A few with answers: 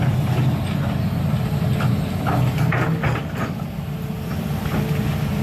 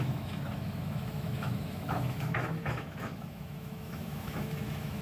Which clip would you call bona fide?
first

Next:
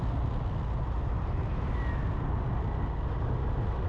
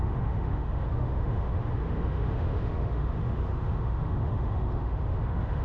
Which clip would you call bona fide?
first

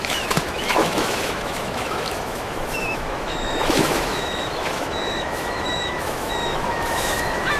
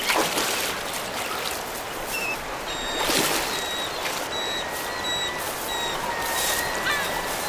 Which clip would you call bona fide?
second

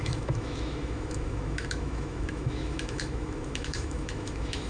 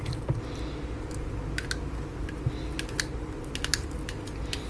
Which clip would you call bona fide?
second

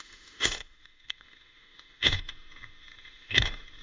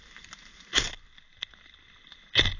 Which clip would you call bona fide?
second